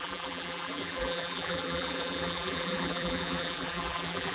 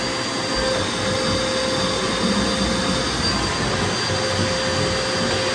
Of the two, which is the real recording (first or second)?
second